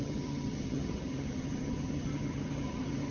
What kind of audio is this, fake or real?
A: fake